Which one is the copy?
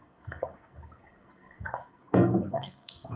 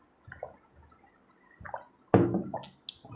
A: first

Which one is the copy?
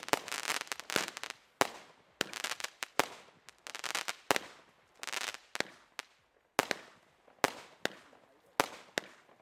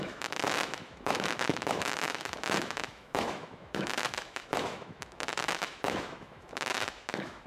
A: second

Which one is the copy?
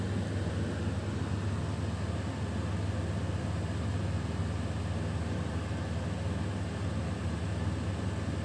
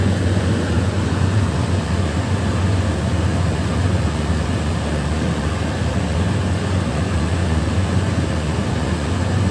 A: second